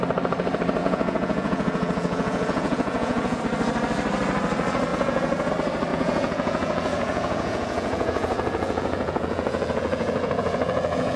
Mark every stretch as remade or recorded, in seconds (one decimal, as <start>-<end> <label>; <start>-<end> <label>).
0.0-0.8 recorded; 0.8-3.4 remade; 3.4-4.9 recorded; 4.9-5.5 remade; 5.5-5.9 recorded; 5.9-11.2 remade